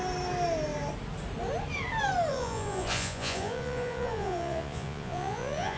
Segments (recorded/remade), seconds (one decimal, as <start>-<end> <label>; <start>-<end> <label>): 0.0-2.3 recorded; 2.3-5.8 remade